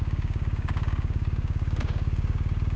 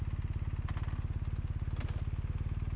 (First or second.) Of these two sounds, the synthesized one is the first